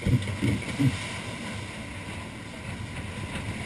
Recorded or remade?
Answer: recorded